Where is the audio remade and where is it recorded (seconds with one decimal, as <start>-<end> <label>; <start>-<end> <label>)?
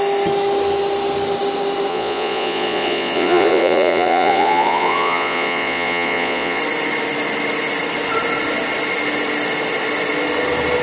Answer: 0.0-1.9 recorded; 1.9-6.6 remade; 6.6-10.8 recorded